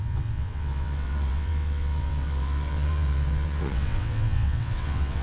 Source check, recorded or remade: remade